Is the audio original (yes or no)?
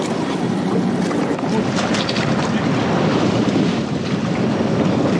yes